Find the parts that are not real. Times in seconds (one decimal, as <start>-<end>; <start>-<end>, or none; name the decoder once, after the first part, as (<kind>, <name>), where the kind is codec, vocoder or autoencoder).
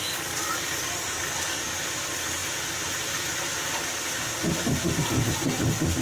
0.5-1.8 (codec, DAC)